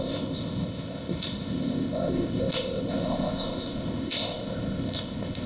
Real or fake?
fake